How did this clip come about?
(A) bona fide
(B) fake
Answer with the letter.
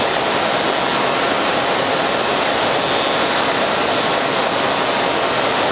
A